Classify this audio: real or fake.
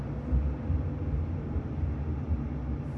real